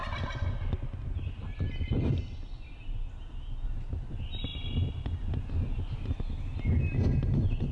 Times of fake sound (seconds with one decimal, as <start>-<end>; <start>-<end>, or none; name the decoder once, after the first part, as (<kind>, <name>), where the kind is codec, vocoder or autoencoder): none